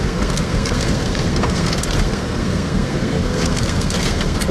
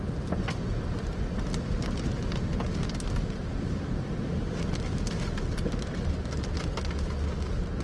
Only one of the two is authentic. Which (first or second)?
second